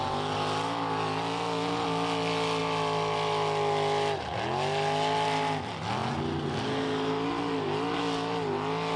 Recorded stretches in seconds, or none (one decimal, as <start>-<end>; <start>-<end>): 0.0-9.0